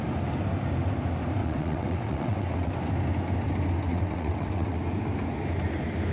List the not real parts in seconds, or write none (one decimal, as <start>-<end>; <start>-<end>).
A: 1.4-2.7; 3.9-4.8